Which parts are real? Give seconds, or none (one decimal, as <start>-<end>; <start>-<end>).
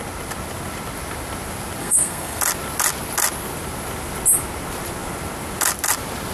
0.0-1.8; 2.4-6.3